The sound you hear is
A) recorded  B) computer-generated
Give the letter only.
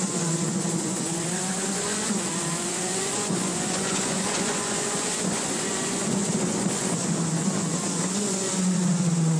B